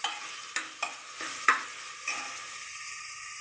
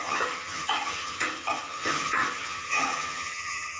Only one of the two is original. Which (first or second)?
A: first